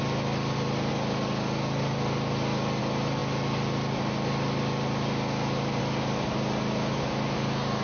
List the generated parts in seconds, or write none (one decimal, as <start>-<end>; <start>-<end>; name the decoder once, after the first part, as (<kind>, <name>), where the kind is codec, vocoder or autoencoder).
none